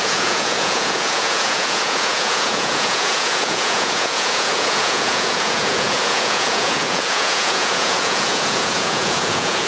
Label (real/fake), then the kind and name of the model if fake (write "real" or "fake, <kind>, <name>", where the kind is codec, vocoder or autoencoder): fake, vocoder, Vocos